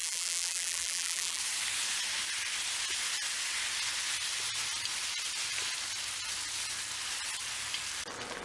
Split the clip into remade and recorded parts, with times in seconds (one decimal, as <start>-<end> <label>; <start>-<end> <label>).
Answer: 0.0-1.4 remade; 1.4-8.4 recorded